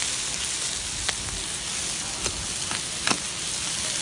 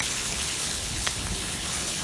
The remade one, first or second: second